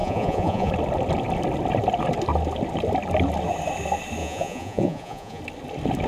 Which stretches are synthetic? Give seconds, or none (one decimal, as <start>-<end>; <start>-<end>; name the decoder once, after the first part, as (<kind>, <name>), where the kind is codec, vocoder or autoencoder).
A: 0.0-0.7 (vocoder, Vocos); 4.2-5.4